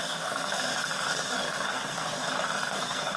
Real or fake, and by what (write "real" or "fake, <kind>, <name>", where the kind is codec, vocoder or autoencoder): fake, codec, SNAC